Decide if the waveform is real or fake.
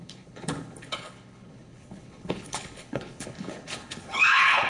fake